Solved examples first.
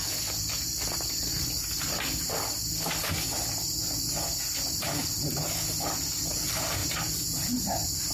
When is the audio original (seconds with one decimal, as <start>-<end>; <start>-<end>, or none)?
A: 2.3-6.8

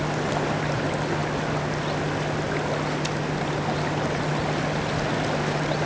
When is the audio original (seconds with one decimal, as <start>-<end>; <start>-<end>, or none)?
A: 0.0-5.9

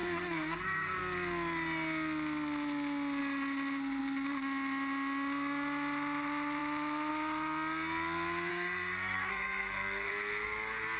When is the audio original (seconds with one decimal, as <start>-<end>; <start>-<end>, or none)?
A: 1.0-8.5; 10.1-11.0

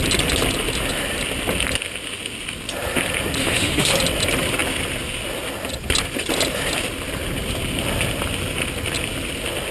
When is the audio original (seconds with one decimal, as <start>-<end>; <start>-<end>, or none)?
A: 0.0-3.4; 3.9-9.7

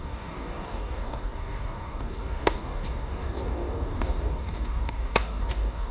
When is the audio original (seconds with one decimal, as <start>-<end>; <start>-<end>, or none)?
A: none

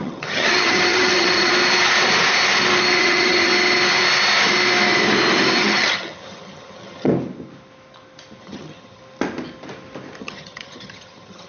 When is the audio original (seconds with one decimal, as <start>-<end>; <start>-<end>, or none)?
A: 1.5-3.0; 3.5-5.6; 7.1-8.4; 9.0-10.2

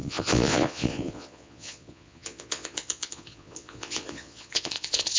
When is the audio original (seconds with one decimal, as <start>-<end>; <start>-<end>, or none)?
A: none

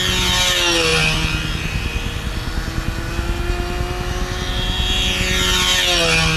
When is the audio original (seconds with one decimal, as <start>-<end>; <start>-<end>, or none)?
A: 0.0-6.4